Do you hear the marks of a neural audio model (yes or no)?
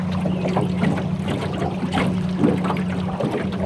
no